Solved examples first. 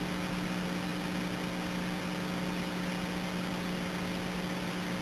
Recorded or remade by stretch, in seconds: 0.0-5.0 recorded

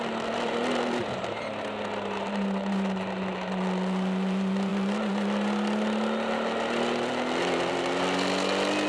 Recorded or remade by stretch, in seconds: 0.0-8.9 recorded

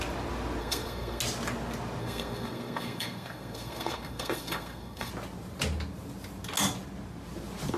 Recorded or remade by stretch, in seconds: 0.0-0.6 recorded; 0.6-1.2 remade; 1.2-2.0 recorded; 2.0-5.1 remade; 5.1-7.8 recorded

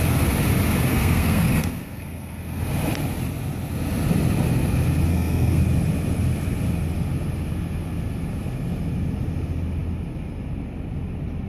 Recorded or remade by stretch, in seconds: 0.0-0.9 recorded; 0.9-2.6 remade; 2.6-5.1 recorded; 5.1-5.6 remade; 5.6-11.5 recorded

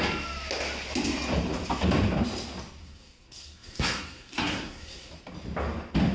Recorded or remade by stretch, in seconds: 0.0-2.8 recorded; 2.8-5.1 remade; 5.1-6.1 recorded

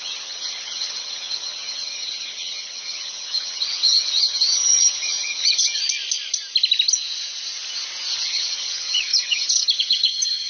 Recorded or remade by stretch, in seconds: 0.0-5.8 remade; 5.8-8.1 recorded; 8.1-10.5 remade

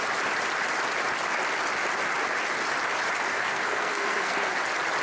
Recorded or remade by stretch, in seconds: 0.0-3.3 recorded; 3.3-4.6 remade; 4.6-5.0 recorded